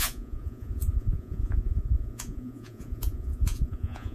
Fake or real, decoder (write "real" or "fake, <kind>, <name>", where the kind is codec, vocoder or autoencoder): fake, vocoder, Vocos